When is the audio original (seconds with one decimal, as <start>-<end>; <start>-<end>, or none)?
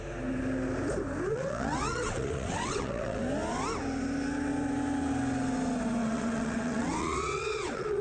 0.0-1.3; 3.2-6.0